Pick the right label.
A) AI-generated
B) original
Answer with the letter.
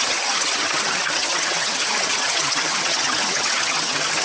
A